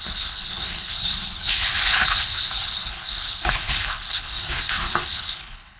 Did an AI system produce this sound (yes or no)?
yes